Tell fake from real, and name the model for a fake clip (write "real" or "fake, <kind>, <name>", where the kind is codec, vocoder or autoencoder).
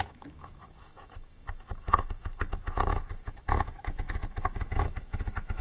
fake, autoencoder, DAC-VAE